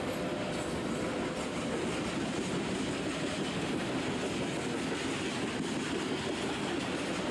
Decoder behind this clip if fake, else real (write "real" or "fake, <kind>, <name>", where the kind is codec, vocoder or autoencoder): real